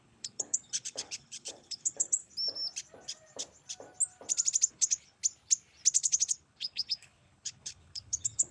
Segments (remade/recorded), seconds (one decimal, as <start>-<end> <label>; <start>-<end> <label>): 0.0-2.2 remade; 2.2-4.7 recorded; 4.7-5.2 remade; 5.2-5.9 recorded; 5.9-8.5 remade